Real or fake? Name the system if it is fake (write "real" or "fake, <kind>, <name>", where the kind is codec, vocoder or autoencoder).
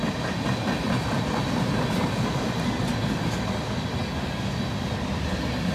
real